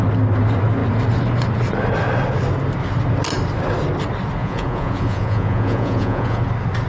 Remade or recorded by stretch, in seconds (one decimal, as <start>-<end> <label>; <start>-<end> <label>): 0.0-4.4 recorded; 4.4-6.4 remade; 6.4-6.9 recorded